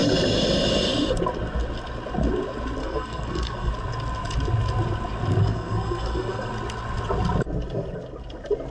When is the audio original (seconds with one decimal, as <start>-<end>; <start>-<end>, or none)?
0.0-2.8; 3.7-5.4; 6.5-8.7

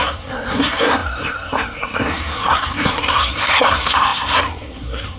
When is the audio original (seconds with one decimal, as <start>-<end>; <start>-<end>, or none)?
none

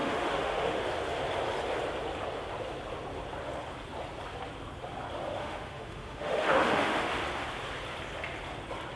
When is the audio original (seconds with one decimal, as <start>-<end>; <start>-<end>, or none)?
0.8-5.4; 7.2-9.0

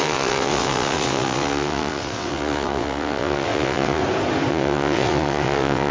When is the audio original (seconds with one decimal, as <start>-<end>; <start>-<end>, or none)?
4.0-4.5

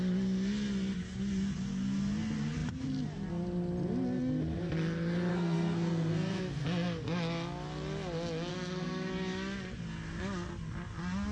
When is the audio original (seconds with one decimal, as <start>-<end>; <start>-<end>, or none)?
0.0-5.3; 6.4-8.5; 9.1-11.3

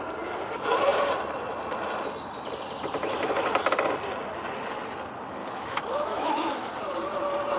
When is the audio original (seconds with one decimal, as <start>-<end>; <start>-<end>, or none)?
0.0-5.4; 6.7-7.6